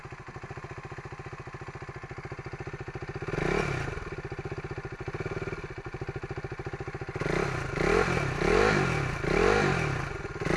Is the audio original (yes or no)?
yes